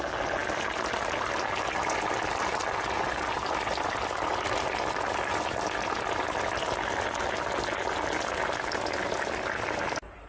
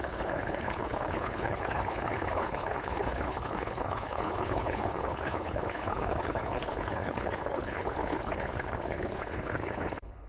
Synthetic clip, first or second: second